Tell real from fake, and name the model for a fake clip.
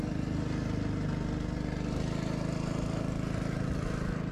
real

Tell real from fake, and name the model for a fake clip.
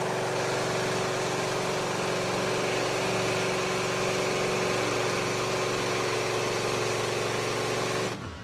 real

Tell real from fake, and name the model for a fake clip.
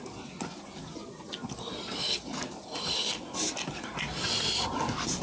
real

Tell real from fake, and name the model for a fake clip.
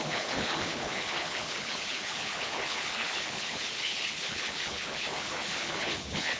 fake, codec, HILCodec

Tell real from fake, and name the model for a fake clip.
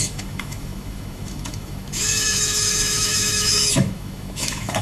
fake, autoencoder, DAC-VAE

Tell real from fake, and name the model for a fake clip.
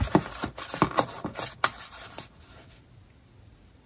real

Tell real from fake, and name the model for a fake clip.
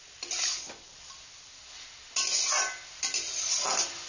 real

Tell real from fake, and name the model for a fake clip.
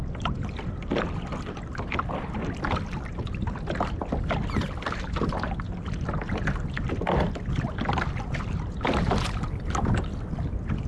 real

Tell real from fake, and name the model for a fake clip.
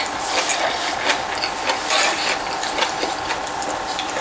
real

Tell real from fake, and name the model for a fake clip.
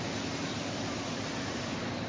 real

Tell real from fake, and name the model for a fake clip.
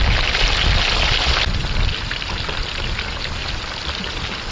real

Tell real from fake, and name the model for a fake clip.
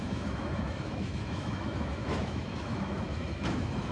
fake, autoencoder, DAC-VAE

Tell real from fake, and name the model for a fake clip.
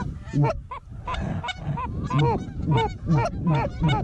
real